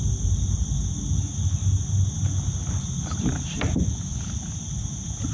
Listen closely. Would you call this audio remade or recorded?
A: recorded